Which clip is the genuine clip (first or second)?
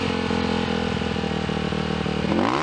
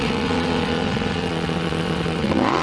first